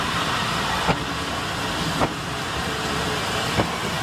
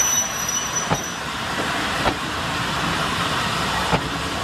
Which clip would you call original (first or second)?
first